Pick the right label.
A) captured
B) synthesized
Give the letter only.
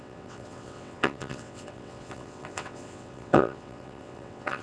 B